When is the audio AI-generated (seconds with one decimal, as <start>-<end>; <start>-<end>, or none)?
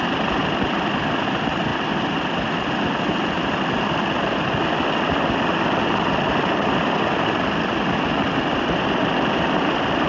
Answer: none